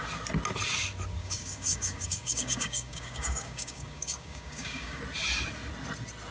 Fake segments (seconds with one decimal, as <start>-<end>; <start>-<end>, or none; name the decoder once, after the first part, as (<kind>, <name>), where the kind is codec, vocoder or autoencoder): 1.2-5.0 (codec, DAC)